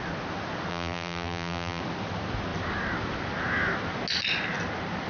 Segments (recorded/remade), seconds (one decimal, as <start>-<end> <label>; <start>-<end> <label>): 0.0-0.7 recorded; 0.7-1.8 remade; 1.8-5.1 recorded